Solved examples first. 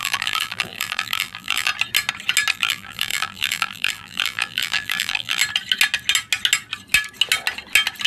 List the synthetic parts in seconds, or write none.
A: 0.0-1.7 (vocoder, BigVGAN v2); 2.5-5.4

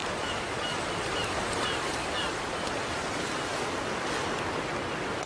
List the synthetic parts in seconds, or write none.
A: 0.0-3.2 (vocoder, BigVGAN v2)